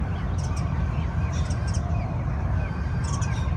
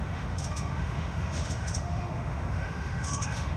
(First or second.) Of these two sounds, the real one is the first